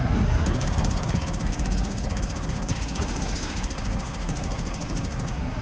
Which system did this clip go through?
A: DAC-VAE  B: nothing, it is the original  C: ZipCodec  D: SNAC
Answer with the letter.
D